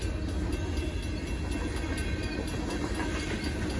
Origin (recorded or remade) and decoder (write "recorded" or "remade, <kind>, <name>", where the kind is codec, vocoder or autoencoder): recorded